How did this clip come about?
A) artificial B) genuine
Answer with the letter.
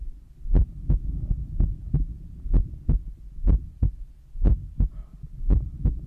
B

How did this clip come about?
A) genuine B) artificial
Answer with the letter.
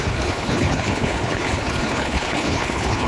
B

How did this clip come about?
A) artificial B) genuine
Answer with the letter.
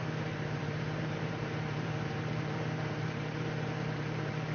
A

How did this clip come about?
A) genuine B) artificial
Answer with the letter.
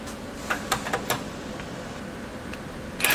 A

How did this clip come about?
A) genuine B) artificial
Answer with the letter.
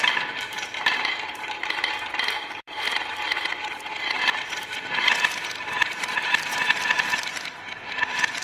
B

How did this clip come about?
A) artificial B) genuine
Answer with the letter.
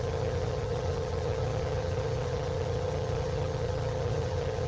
A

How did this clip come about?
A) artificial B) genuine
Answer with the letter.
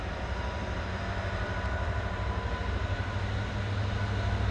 B